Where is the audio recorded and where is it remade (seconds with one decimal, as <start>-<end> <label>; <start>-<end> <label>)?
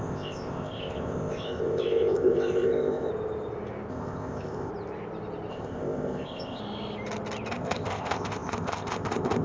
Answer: 0.0-3.1 remade; 3.1-3.9 recorded; 3.9-4.7 remade; 4.7-5.5 recorded; 5.5-6.6 remade; 6.6-7.5 recorded; 7.5-9.4 remade